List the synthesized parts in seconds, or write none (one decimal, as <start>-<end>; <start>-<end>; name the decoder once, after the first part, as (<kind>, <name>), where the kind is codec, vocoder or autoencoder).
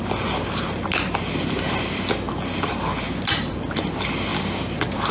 none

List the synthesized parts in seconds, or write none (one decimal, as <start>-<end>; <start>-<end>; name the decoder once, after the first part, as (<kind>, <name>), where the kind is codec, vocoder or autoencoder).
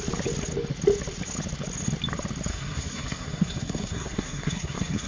2.5-5.1 (codec, SNAC)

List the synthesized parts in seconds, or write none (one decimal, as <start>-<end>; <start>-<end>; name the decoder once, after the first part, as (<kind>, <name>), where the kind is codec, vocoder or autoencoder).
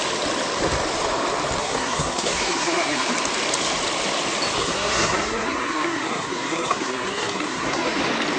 1.6-3.1 (codec, SNAC); 4.6-8.0